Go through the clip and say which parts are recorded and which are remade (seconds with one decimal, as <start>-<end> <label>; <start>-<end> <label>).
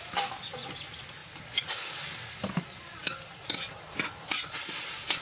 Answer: 0.0-5.2 recorded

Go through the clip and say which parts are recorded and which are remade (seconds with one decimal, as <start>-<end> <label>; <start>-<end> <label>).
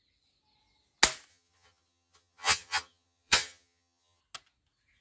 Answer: 0.0-1.3 recorded; 1.3-4.2 remade; 4.2-5.0 recorded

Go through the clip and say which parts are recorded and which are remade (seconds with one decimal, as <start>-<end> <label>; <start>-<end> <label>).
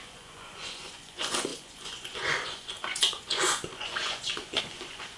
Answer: 0.0-5.2 remade